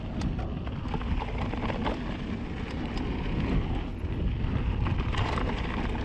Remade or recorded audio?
recorded